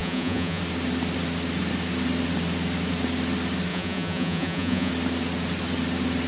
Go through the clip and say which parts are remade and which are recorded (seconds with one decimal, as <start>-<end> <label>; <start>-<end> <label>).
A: 0.0-0.6 remade; 0.6-3.7 recorded; 3.7-4.9 remade; 4.9-6.3 recorded